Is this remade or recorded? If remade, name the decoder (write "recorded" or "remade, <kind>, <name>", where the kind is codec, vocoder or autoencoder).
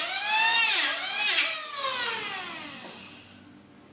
recorded